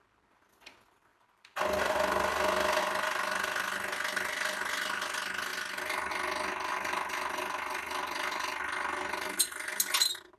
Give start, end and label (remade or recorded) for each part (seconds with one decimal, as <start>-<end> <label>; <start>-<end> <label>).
0.0-10.4 recorded